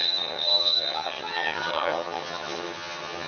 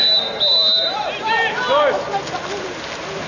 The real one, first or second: second